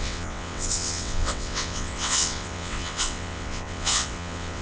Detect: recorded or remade remade